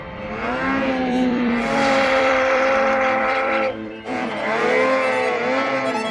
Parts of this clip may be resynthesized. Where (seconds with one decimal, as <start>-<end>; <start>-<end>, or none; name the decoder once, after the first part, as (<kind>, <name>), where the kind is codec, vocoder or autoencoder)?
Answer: 1.0-4.7 (vocoder, BigVGAN v2)